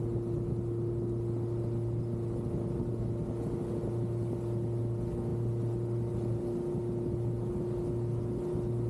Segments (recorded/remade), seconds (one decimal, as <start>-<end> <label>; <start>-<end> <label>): 0.0-8.9 recorded